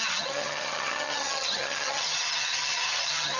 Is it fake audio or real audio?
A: fake